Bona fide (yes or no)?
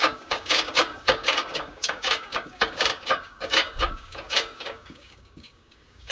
no